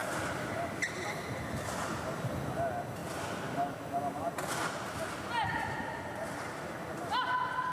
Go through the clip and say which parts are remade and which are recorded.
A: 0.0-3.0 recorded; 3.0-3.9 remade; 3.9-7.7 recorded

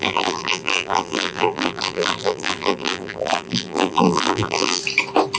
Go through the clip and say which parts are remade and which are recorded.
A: 0.0-4.8 remade; 4.8-5.4 recorded

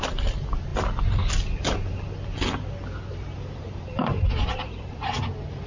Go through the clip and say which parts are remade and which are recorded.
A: 0.0-3.1 recorded; 3.1-5.2 remade; 5.2-5.7 recorded

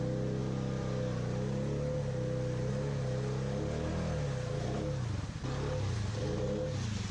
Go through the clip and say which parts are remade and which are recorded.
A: 0.0-7.1 recorded

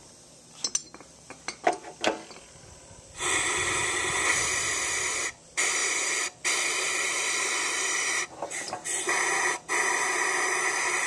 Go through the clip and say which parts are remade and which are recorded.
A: 0.0-11.1 recorded

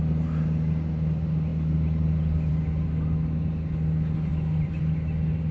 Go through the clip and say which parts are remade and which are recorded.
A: 0.0-4.3 recorded; 4.3-4.8 remade; 4.8-5.5 recorded